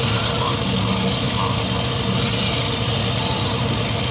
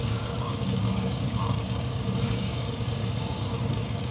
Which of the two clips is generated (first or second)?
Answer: second